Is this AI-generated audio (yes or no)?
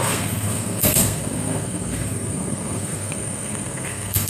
yes